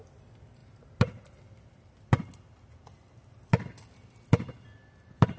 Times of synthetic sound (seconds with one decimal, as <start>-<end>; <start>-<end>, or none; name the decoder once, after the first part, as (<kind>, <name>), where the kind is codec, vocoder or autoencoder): none